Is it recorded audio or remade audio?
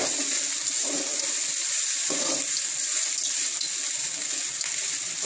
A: recorded